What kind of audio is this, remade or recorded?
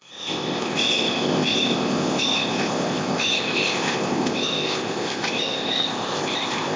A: remade